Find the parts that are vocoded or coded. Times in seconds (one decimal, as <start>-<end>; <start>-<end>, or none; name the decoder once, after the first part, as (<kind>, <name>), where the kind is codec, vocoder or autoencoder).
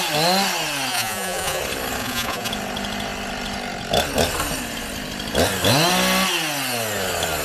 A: 0.9-1.6 (vocoder, Vocos); 2.0-2.5